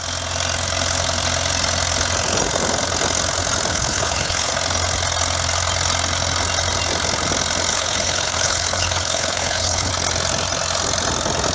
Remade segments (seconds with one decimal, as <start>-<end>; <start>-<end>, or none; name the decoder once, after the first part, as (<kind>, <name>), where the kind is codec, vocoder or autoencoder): 3.7-4.5 (codec, HILCodec); 7.7-9.9